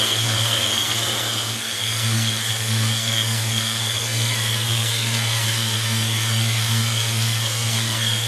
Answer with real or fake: fake